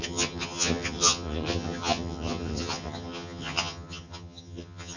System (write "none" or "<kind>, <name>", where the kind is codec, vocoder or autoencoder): vocoder, HiFi-GAN